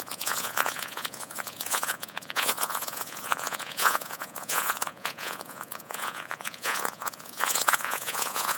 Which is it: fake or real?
fake